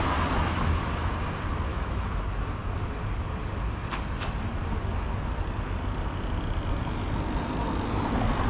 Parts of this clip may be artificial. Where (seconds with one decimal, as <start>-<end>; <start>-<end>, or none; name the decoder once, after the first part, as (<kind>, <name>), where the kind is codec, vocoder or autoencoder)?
1.7-2.2 (autoencoder, DAC-VAE)